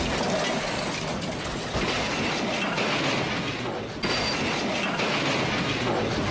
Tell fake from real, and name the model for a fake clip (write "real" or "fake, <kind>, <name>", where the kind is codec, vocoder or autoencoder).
real